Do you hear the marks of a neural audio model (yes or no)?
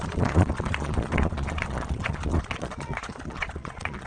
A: yes